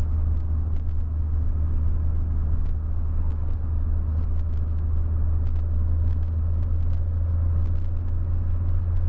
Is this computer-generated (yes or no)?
no